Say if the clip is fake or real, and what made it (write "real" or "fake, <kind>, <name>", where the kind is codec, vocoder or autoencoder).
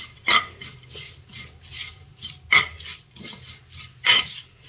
real